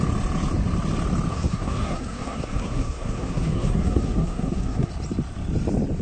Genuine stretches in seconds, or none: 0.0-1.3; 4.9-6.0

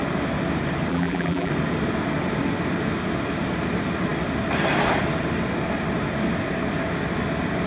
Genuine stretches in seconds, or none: 0.0-0.9; 1.5-7.7

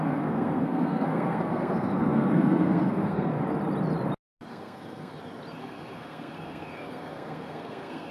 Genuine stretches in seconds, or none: 3.4-4.5; 5.1-5.6

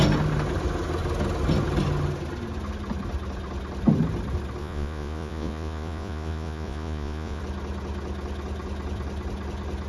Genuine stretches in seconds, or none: 0.0-4.6; 7.4-9.9

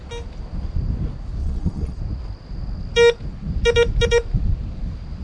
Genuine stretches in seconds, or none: 0.0-1.4; 2.0-5.2

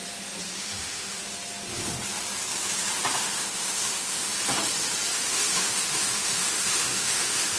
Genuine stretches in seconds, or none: 0.0-0.6; 1.2-3.2; 4.3-5.1

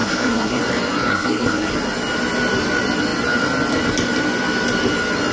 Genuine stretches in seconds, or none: 0.6-1.1; 1.7-5.3

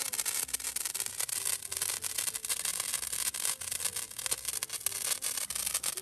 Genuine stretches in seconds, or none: 0.0-6.0